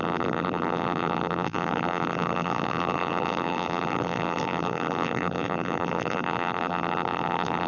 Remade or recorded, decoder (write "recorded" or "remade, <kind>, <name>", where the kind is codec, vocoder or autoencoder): remade, vocoder, BigVGAN v2